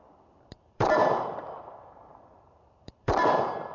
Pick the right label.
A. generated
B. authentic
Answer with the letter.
A